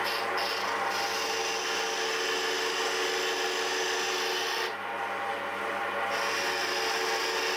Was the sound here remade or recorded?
recorded